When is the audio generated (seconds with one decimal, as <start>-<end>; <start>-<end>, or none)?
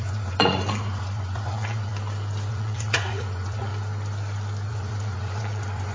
0.0-1.9; 2.5-3.7; 4.7-5.9